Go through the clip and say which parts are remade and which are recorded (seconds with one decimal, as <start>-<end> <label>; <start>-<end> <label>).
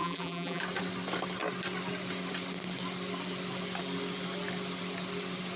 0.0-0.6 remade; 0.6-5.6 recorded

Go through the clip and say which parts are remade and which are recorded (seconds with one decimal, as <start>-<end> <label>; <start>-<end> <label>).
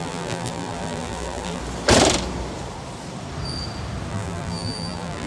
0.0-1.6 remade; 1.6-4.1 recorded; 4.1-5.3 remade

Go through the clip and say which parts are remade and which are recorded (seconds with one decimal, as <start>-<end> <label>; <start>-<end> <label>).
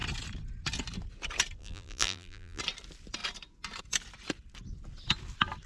0.0-1.6 recorded; 1.6-2.6 remade; 2.6-5.7 recorded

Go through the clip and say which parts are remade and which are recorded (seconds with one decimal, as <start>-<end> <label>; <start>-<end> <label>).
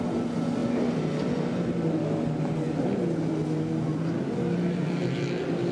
0.0-5.7 recorded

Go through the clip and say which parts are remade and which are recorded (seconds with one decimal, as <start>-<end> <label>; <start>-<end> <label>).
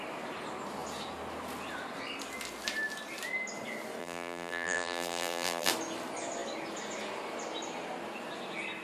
0.0-4.0 recorded; 4.0-5.7 remade; 5.7-8.8 recorded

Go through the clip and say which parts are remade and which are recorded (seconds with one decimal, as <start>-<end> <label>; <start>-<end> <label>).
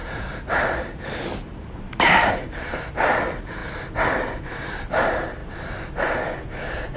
0.0-3.6 remade; 3.6-4.4 recorded; 4.4-5.4 remade; 5.4-7.0 recorded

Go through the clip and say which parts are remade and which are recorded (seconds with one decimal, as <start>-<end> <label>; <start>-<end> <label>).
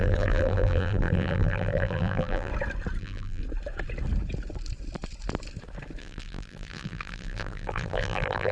0.0-2.5 remade; 2.5-3.0 recorded; 3.0-3.4 remade; 3.4-6.0 recorded; 6.0-8.5 remade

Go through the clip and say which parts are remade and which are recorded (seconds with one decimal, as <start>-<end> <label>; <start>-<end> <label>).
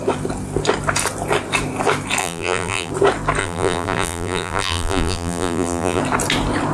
0.0-2.2 recorded; 2.2-2.9 remade; 2.9-3.4 recorded; 3.4-6.0 remade; 6.0-6.7 recorded